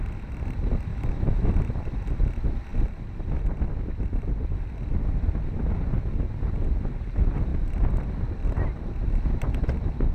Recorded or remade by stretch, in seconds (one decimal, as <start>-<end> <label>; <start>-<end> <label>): 0.0-0.9 recorded; 0.9-1.5 remade; 1.5-10.1 recorded